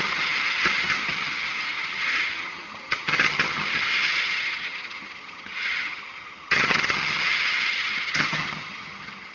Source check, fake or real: fake